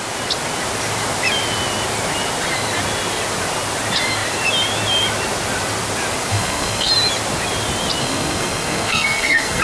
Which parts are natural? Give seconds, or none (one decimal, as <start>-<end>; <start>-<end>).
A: 0.0-6.3; 6.9-8.0